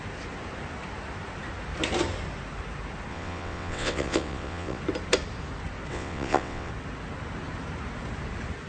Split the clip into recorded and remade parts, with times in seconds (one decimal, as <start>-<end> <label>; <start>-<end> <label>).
0.0-3.1 recorded; 3.1-4.8 remade; 4.8-5.9 recorded; 5.9-6.7 remade; 6.7-8.7 recorded